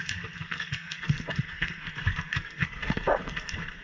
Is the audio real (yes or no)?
no